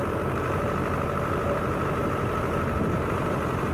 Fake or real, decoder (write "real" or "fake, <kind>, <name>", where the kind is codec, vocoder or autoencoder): fake, vocoder, BigVGAN v2